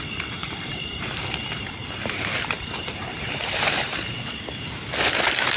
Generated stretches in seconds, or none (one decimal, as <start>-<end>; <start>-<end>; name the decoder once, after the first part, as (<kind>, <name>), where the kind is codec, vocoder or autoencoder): 0.4-3.8 (vocoder, BigVGAN v2)